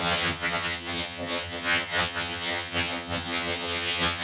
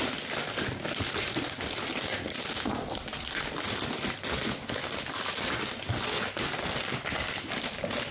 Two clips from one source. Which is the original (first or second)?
second